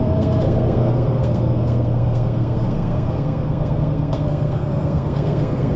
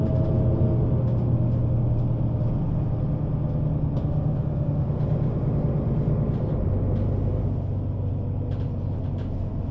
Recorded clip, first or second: second